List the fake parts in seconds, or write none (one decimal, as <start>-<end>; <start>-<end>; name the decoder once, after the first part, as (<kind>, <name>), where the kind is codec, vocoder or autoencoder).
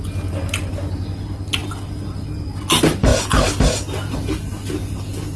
none